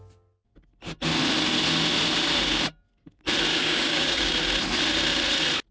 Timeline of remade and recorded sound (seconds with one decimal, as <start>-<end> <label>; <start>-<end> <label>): 0.0-3.5 recorded; 3.5-4.3 remade; 4.3-5.7 recorded